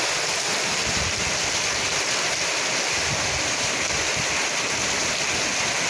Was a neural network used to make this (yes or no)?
no